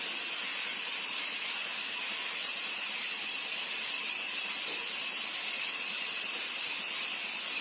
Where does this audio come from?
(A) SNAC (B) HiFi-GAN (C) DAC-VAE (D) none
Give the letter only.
D